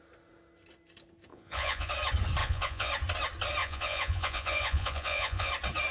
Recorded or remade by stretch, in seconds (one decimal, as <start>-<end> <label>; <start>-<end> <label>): 0.0-1.3 recorded; 1.3-1.9 remade; 1.9-2.4 recorded; 2.4-2.9 remade; 2.9-3.6 recorded; 3.6-5.5 remade; 5.5-5.9 recorded